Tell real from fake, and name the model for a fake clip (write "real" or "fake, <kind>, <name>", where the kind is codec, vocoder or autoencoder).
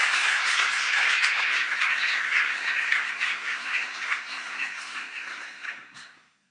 fake, codec, SNAC